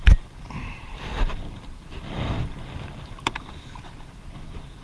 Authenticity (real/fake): real